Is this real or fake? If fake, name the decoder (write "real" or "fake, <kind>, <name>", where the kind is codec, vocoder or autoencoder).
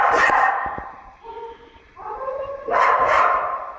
fake, vocoder, BigVGAN v2